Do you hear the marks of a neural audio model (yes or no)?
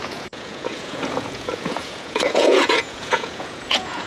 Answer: yes